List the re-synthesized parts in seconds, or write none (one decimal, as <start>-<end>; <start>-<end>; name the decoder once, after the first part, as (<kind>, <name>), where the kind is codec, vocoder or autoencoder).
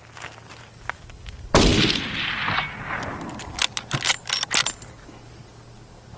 none